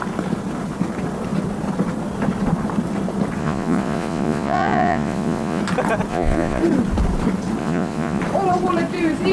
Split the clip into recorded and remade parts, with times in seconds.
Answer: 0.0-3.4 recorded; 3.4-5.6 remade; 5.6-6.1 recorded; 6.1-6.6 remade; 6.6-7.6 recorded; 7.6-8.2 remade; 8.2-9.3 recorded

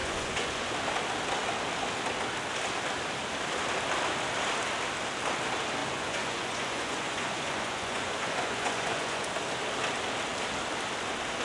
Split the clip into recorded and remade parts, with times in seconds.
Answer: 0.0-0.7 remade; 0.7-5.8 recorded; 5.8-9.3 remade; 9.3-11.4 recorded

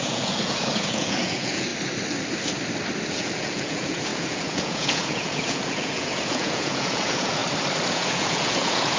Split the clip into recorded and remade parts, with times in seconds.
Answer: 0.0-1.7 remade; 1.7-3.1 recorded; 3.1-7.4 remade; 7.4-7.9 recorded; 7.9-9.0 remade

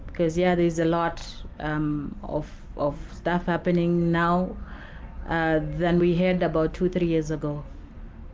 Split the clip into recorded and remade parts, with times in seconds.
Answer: 0.0-8.3 recorded

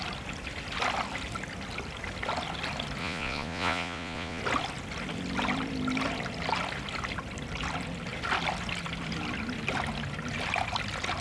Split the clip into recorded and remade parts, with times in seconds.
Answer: 0.0-3.0 recorded; 3.0-4.4 remade; 4.4-11.2 recorded